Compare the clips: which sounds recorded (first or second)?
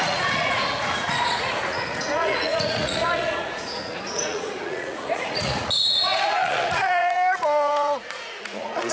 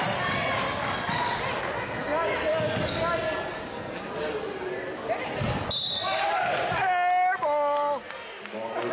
second